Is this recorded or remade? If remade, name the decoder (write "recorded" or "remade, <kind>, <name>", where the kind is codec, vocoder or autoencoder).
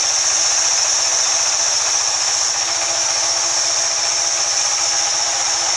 recorded